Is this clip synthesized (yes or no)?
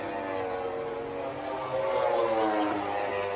no